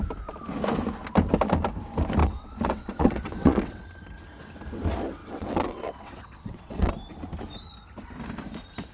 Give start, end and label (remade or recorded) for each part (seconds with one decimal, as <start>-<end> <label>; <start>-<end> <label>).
0.0-2.2 recorded; 2.2-3.8 remade; 3.8-5.2 recorded; 5.2-6.9 remade; 6.9-8.9 recorded